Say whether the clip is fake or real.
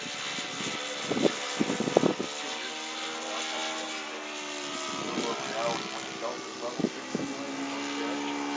real